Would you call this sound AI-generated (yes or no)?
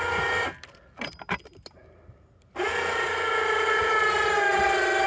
no